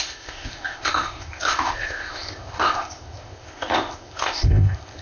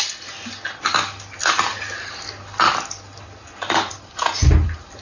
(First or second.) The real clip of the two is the second